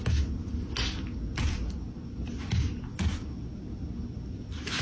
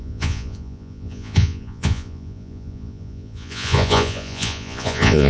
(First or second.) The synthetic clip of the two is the second